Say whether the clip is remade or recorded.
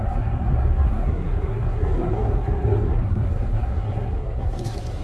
remade